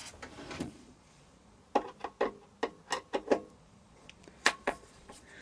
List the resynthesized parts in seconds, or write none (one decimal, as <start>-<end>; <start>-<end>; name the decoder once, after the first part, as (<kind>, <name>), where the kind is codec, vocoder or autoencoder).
0.6-1.6 (vocoder, Vocos); 3.5-5.4